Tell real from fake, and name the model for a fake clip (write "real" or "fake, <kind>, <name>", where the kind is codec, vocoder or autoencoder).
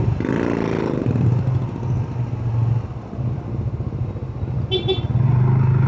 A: real